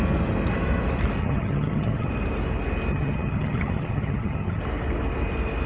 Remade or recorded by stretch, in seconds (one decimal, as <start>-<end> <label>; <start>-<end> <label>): 0.0-1.2 recorded; 1.2-2.1 remade; 2.1-2.9 recorded; 2.9-4.6 remade; 4.6-5.7 recorded